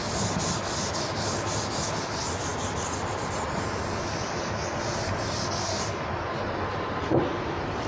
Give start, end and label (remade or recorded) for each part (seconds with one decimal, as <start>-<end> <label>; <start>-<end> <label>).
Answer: 0.0-7.9 recorded